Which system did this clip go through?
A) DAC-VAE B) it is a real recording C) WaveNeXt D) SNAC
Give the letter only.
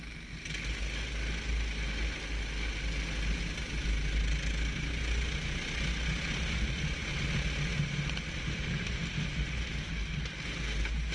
B